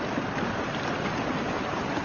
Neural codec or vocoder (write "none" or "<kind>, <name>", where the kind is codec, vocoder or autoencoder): none